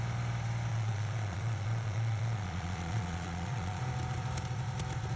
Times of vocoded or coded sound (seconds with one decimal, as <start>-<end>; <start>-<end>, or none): 0.7-3.8